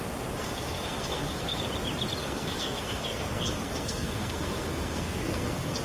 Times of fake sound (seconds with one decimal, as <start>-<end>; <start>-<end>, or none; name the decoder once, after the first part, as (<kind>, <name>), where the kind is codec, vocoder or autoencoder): 0.4-1.6 (codec, SNAC); 2.2-5.8